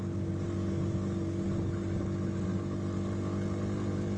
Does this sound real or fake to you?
real